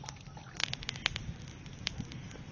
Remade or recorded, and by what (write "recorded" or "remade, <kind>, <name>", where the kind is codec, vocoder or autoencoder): recorded